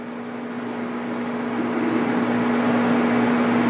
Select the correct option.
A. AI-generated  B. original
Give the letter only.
B